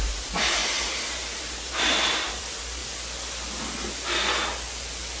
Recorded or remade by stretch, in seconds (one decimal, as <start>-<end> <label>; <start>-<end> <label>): 0.0-2.8 remade; 2.8-5.2 recorded